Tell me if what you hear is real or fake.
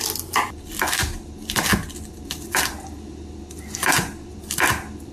real